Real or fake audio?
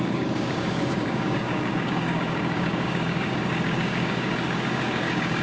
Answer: fake